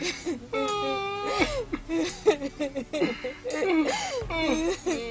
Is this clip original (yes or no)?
yes